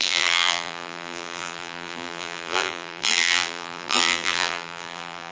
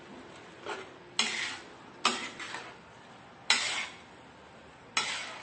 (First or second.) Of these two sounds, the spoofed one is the first